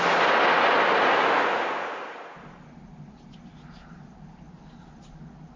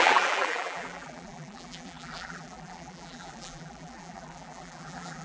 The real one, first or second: first